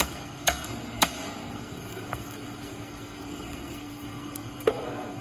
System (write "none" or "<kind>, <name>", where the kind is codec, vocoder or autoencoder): codec, SNAC